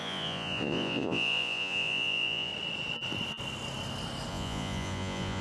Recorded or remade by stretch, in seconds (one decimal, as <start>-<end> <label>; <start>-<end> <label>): 0.0-2.5 remade; 2.5-4.3 recorded; 4.3-5.4 remade